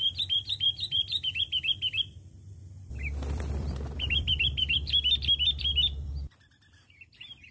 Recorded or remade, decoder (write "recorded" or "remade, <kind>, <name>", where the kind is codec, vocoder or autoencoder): remade, vocoder, BigVGAN v2